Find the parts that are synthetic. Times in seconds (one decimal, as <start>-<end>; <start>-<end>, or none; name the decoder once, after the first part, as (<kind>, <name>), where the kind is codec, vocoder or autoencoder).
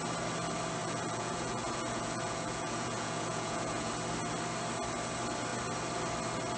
0.8-3.9 (vocoder, Vocos)